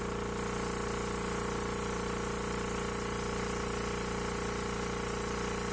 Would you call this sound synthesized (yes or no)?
no